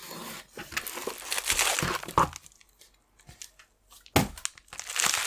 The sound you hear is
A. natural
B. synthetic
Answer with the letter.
A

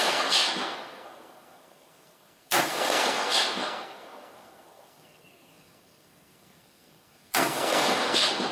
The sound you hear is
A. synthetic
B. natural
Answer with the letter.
A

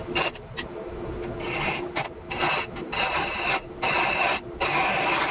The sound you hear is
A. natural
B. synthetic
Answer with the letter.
A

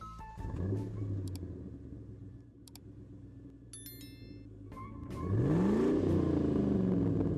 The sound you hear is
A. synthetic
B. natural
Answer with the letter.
B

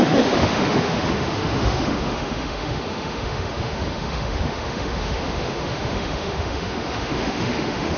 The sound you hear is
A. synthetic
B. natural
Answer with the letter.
A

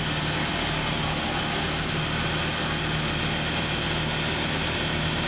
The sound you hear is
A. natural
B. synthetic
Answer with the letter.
A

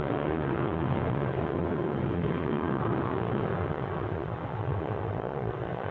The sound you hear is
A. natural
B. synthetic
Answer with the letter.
B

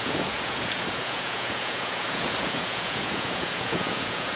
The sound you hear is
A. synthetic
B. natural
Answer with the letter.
A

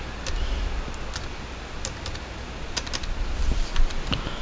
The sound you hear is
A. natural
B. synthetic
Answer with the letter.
A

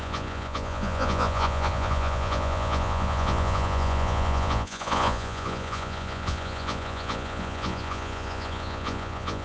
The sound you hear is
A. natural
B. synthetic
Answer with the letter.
B